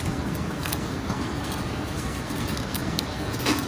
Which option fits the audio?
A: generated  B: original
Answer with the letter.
A